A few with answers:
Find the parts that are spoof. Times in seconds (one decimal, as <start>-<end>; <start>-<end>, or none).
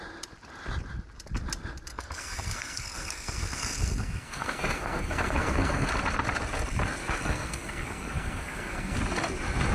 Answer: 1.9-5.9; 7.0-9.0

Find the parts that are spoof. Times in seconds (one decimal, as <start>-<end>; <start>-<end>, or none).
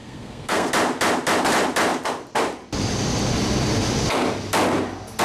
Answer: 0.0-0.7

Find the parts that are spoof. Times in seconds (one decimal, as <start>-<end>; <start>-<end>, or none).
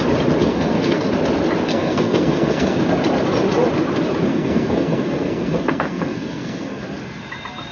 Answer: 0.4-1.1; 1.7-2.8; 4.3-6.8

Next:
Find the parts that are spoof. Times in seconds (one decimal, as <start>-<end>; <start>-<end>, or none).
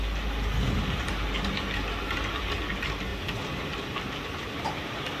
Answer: none